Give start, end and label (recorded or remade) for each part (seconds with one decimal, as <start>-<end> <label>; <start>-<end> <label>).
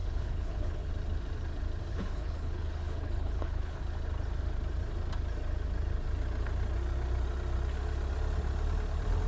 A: 0.0-0.9 remade; 0.9-1.9 recorded; 1.9-3.8 remade; 3.8-9.3 recorded